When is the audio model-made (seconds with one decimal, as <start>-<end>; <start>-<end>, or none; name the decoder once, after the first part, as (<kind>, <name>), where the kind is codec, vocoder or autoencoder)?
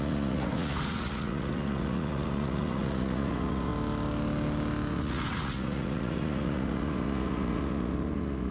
0.0-3.7 (vocoder, Vocos); 4.9-8.5